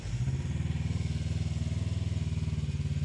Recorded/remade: recorded